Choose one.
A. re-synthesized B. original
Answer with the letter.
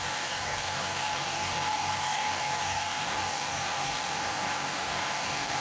A